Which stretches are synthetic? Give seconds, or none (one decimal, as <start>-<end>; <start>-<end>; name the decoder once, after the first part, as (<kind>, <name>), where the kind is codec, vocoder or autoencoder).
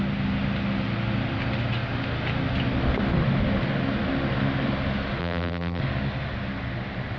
5.2-5.8 (vocoder, BigVGAN v2)